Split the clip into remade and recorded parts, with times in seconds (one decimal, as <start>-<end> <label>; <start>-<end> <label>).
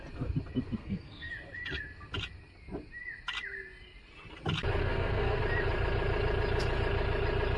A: 0.0-0.8 recorded; 0.8-1.3 remade; 1.3-4.8 recorded; 4.8-5.4 remade; 5.4-7.6 recorded